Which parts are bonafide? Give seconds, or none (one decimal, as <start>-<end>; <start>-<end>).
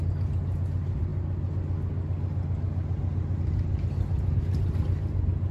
0.0-5.5